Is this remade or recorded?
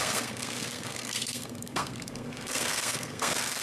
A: remade